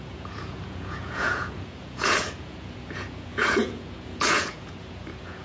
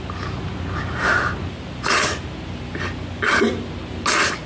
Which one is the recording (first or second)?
second